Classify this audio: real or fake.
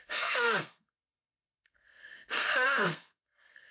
fake